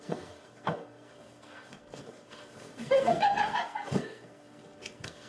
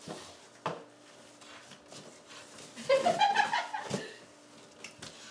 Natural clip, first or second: second